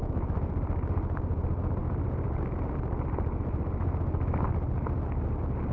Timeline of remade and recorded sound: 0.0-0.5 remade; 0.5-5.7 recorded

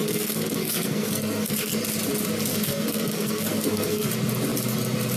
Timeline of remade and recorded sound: 0.0-1.8 remade; 1.8-2.5 recorded; 2.5-4.1 remade; 4.1-5.2 recorded